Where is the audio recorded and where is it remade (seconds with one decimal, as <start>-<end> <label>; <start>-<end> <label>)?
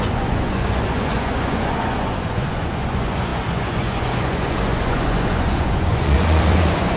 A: 0.0-7.0 remade